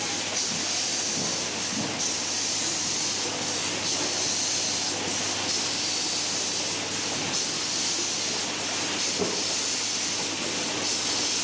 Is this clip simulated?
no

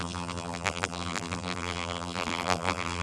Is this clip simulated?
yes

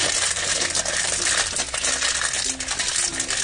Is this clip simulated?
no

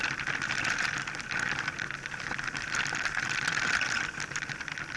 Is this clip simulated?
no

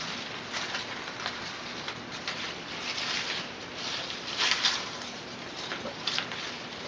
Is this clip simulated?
no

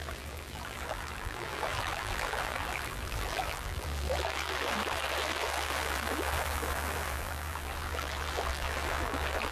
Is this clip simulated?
yes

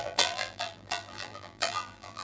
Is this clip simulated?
yes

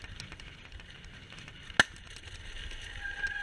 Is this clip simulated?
no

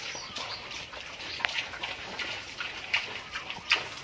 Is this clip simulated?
no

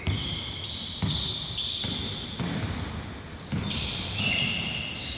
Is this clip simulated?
no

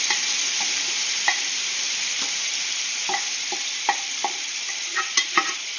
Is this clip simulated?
yes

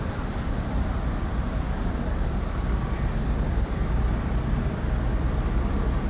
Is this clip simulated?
yes